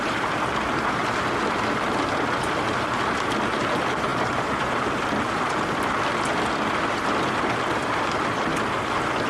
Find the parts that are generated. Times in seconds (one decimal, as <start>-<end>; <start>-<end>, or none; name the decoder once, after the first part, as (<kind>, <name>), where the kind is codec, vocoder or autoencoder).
none